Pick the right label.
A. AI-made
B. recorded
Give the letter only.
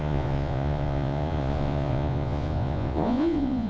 A